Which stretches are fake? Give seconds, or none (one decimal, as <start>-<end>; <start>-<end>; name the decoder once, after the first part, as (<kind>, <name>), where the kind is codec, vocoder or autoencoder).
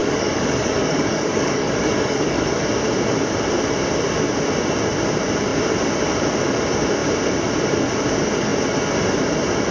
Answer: 0.0-2.6 (codec, DAC)